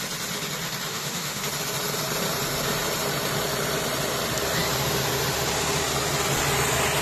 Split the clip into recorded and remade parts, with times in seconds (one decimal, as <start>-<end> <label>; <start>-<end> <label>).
0.0-0.9 recorded; 0.9-1.4 remade; 1.4-7.0 recorded